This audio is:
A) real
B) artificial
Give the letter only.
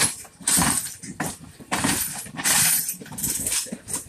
A